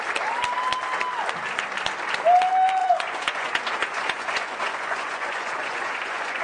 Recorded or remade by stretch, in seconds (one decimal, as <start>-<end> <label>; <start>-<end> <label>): 0.0-2.8 recorded; 2.8-6.4 remade